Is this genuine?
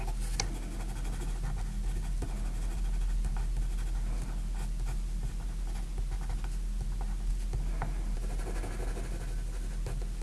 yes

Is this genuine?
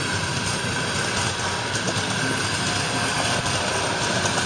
yes